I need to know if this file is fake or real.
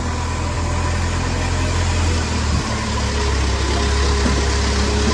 real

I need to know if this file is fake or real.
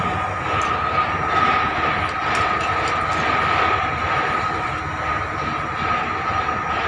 real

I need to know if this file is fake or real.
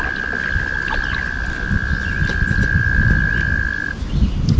real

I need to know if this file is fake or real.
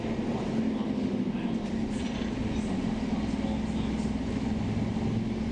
real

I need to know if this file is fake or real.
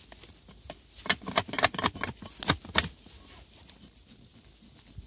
real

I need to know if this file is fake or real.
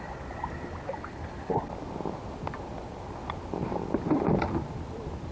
real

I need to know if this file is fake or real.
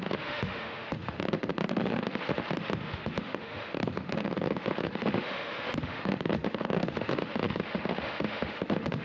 fake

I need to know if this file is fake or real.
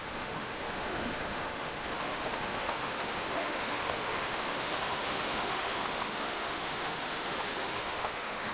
fake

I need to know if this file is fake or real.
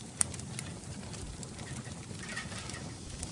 fake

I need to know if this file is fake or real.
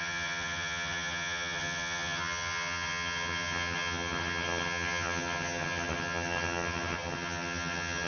fake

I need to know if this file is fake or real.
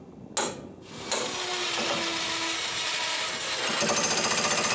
real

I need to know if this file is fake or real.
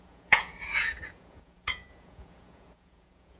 fake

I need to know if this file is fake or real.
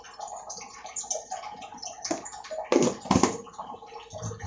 real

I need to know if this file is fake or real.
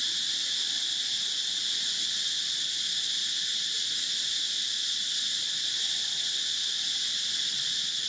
real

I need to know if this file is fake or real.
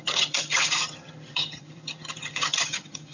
fake